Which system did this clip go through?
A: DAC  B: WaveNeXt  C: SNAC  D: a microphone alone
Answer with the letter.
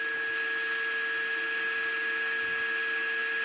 D